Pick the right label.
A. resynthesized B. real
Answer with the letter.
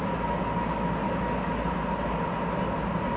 B